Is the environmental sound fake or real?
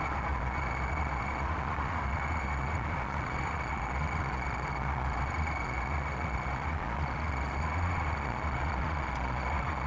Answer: fake